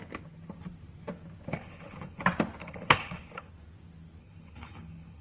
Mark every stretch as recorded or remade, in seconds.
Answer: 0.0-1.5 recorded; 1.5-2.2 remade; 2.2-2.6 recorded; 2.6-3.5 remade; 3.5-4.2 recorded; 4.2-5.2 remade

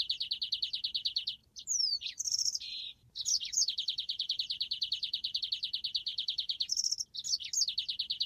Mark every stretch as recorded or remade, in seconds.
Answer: 0.0-1.4 recorded; 1.4-5.4 remade; 5.4-6.1 recorded; 6.1-6.9 remade; 6.9-8.3 recorded

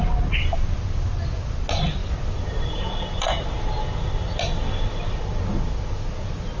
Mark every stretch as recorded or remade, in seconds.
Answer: 0.0-6.6 recorded

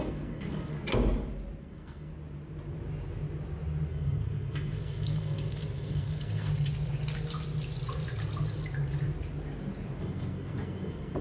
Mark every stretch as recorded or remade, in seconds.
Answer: 0.0-0.7 remade; 0.7-1.6 recorded; 1.6-2.1 remade; 2.1-3.9 recorded; 3.9-6.5 remade; 6.5-10.0 recorded; 10.0-11.2 remade

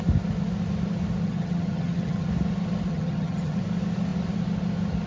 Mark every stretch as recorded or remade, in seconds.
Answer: 0.0-1.2 recorded; 1.2-2.3 remade; 2.3-2.9 recorded; 2.9-3.6 remade; 3.6-5.1 recorded

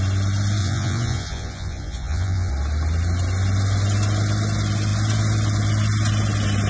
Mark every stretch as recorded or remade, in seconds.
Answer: 0.0-0.6 recorded; 0.6-2.5 remade; 2.5-6.7 recorded